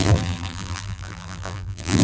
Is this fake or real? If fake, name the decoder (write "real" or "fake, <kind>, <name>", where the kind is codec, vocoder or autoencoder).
fake, vocoder, BigVGAN v2